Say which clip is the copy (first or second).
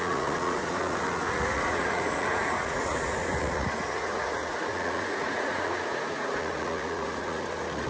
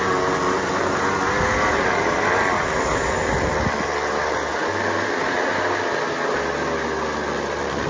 first